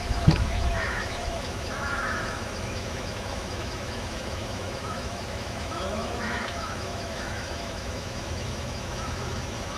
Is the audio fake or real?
fake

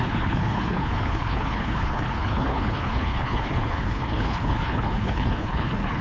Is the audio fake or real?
fake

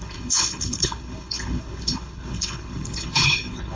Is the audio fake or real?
fake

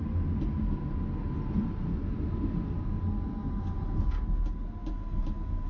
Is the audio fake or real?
real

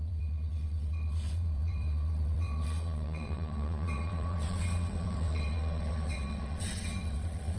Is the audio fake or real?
fake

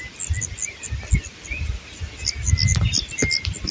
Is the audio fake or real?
real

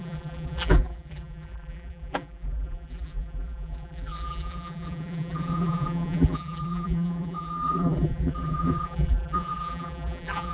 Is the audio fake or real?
fake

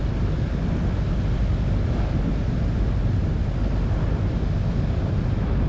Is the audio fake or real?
real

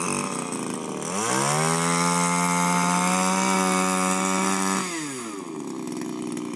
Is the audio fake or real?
real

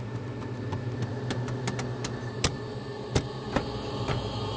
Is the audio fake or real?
real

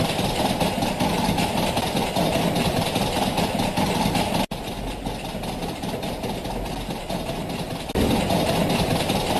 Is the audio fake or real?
real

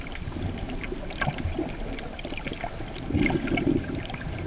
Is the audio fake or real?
real